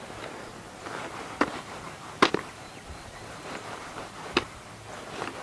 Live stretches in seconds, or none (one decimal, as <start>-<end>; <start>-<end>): 0.0-1.5; 4.7-5.4